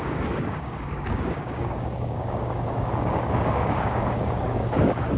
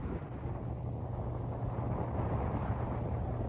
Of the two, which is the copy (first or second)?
first